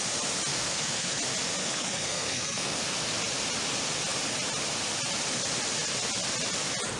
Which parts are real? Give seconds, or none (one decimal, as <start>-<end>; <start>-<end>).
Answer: 0.0-0.5; 1.2-1.6; 2.8-7.0